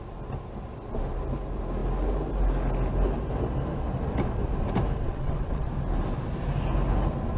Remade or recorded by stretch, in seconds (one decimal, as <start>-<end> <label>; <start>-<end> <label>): 0.0-5.0 recorded; 5.0-5.7 remade; 5.7-7.4 recorded